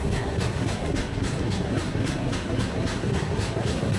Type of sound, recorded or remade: remade